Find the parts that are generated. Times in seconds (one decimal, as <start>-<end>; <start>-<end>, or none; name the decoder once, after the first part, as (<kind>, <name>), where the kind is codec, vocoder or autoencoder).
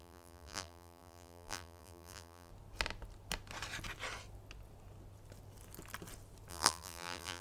0.0-2.5 (vocoder, BigVGAN v2); 6.5-7.4